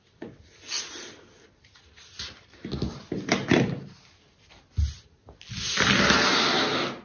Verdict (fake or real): real